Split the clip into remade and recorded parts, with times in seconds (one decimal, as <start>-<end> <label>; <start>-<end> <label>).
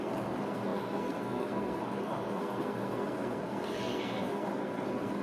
0.0-5.2 remade